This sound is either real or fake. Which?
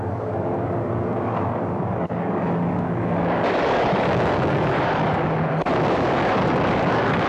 fake